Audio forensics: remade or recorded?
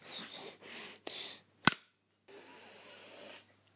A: recorded